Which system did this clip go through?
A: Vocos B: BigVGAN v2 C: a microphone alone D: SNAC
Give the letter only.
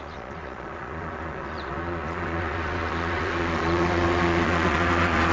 A